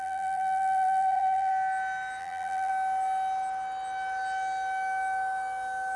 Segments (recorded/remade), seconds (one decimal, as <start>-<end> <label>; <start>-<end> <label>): 0.0-1.5 remade; 1.5-2.2 recorded; 2.2-2.7 remade; 2.7-6.0 recorded